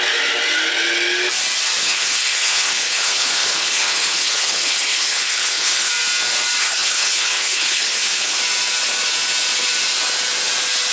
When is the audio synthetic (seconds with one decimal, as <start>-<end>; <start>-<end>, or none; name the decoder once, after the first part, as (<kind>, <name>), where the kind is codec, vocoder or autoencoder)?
1.8-5.9 (codec, HILCodec); 6.6-8.4